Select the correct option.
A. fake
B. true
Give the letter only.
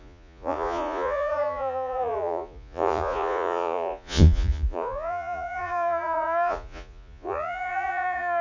A